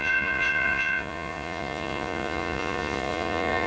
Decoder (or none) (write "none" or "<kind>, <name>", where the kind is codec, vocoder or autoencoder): vocoder, Vocos